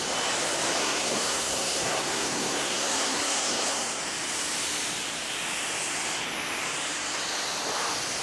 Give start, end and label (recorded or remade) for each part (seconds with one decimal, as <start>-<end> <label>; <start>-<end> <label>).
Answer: 0.0-0.8 recorded; 0.8-4.0 remade; 4.0-8.2 recorded